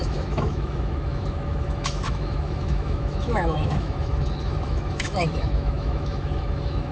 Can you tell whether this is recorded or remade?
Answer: remade